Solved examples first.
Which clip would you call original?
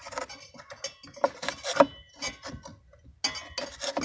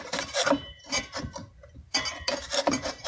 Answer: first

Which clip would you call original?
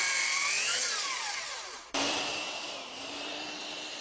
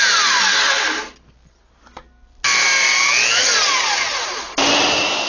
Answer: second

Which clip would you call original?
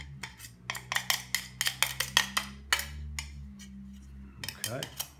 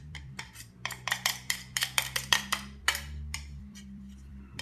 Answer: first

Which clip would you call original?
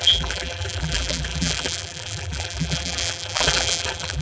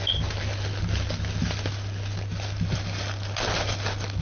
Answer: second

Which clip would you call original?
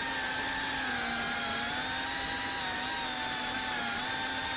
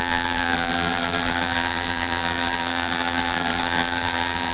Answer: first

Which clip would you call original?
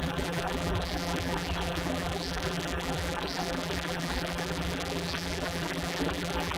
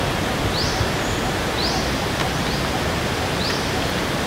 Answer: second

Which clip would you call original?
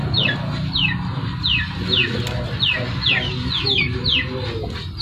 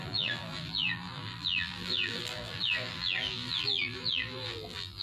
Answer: first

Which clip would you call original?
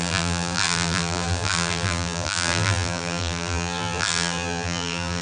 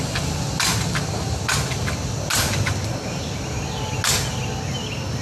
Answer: second